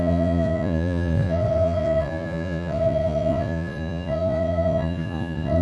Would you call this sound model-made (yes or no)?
yes